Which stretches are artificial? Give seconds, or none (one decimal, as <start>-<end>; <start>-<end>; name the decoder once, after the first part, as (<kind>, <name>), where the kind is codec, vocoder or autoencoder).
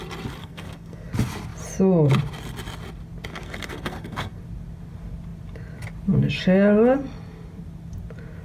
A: 0.4-1.1 (codec, SNAC); 3.3-4.4